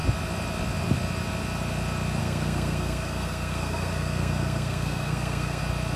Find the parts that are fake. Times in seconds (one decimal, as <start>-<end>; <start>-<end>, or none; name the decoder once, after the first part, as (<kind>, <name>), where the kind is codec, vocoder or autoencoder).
2.2-5.6 (codec, SNAC)